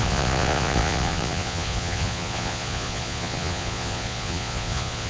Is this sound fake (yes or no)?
yes